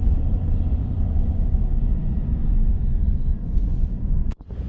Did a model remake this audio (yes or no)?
yes